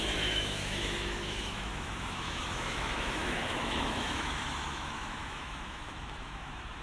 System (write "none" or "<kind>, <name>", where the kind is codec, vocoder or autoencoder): autoencoder, DAC-VAE